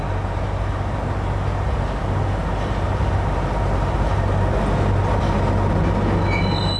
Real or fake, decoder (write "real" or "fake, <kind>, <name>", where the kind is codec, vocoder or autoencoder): real